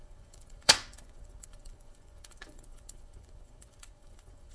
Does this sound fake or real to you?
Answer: fake